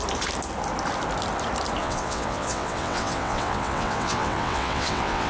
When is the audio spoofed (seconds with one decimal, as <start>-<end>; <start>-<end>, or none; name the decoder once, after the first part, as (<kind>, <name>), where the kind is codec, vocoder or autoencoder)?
1.8-5.3 (vocoder, WaveNeXt)